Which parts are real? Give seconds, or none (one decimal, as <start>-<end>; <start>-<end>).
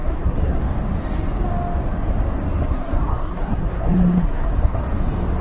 0.6-2.6; 4.8-5.4